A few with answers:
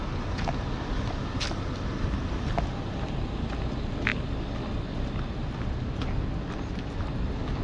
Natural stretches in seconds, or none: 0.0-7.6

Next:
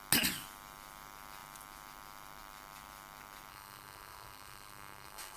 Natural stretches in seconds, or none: 0.0-3.5

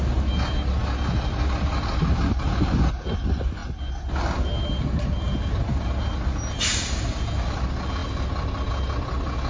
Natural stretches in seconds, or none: 0.0-9.5